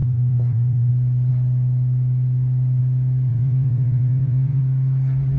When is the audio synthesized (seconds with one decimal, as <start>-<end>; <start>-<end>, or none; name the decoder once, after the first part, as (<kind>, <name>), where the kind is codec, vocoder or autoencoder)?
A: 0.0-0.9 (vocoder, Vocos); 3.3-4.6